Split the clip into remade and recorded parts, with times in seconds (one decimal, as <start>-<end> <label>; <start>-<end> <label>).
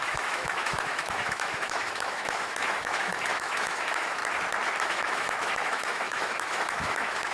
0.0-4.2 remade; 4.2-4.8 recorded; 4.8-7.3 remade